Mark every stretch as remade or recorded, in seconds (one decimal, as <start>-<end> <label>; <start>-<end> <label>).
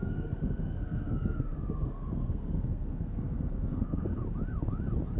0.0-4.2 remade; 4.2-5.2 recorded